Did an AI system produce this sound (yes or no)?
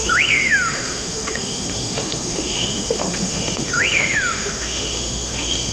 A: yes